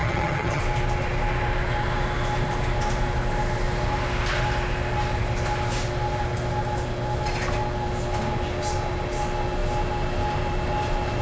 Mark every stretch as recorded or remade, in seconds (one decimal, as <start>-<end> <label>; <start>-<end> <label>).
0.0-0.6 remade; 0.6-11.2 recorded